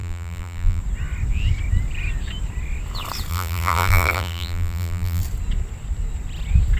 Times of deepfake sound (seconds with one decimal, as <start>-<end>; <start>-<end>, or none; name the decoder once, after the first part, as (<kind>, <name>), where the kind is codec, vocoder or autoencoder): 0.0-0.8 (vocoder, BigVGAN v2); 3.3-5.2